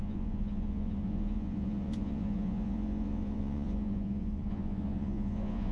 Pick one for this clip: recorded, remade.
remade